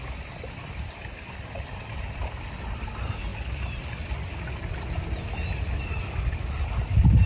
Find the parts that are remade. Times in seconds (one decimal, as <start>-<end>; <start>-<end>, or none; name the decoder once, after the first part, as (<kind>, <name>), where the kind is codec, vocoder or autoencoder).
none